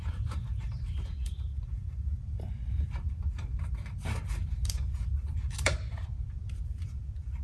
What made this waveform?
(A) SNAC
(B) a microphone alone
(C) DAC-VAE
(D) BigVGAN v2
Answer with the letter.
D